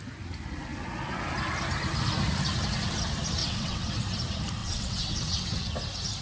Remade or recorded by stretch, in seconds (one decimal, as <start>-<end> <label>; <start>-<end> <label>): 0.0-3.4 recorded; 3.4-3.9 remade; 3.9-4.6 recorded; 4.6-5.6 remade; 5.6-6.2 recorded